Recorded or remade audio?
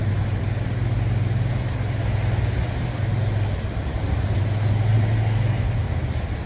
recorded